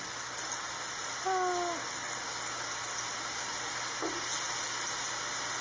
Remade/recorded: recorded